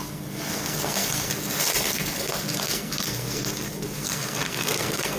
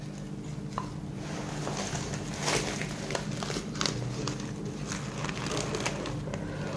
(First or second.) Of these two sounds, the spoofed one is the first